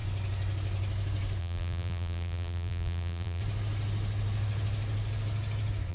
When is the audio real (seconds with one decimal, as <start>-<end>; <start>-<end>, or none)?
0.0-1.4; 3.4-5.9